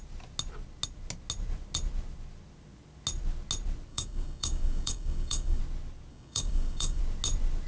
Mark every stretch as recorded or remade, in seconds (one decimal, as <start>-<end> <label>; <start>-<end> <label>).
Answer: 0.0-3.9 recorded; 3.9-5.6 remade; 5.6-6.1 recorded; 6.1-7.0 remade; 7.0-7.7 recorded